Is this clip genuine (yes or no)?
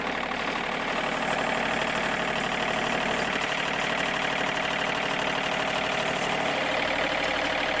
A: yes